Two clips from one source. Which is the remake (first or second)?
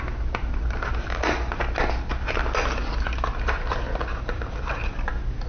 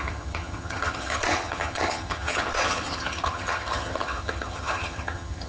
second